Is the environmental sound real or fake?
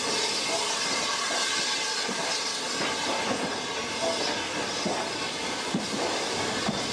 real